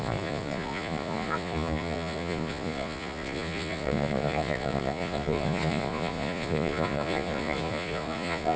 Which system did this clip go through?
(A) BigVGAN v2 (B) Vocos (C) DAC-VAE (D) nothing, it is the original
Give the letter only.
B